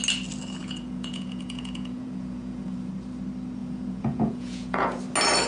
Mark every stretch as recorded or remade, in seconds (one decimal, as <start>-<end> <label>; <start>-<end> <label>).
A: 0.0-0.6 recorded; 0.6-2.9 remade; 2.9-3.6 recorded; 3.6-5.0 remade; 5.0-5.5 recorded